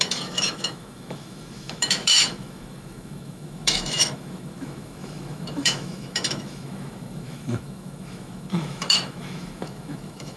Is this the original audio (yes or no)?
no